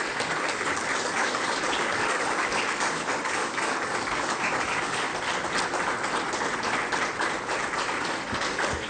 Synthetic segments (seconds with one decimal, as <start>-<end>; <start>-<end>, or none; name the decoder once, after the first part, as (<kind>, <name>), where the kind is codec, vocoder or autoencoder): 0.0-5.1 (codec, DAC); 8.0-8.9